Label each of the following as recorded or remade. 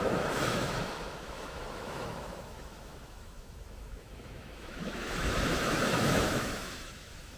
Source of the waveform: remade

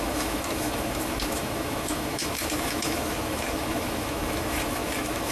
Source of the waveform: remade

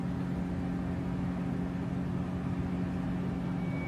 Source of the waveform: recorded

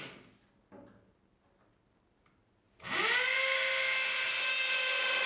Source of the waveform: recorded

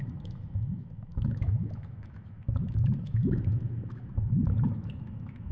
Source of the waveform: remade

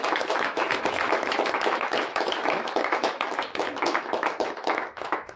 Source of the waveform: remade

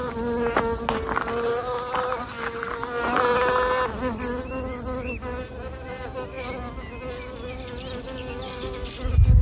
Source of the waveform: recorded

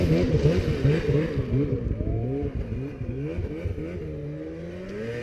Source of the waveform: recorded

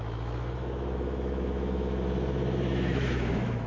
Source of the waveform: remade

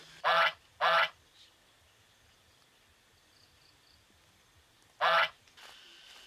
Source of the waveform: recorded